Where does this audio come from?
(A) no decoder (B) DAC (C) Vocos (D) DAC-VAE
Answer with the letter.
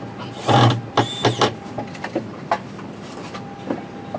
A